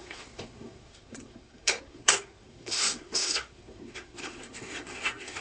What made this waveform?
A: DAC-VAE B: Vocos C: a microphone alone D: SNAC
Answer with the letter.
D